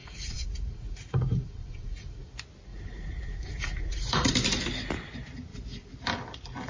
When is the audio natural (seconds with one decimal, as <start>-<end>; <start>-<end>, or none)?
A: 2.3-2.7; 4.3-6.7